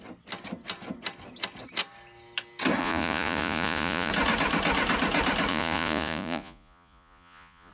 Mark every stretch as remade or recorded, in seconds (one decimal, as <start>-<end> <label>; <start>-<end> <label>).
0.0-2.8 recorded; 2.8-4.1 remade; 4.1-5.5 recorded; 5.5-7.7 remade